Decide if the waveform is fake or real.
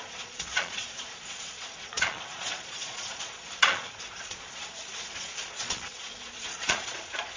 fake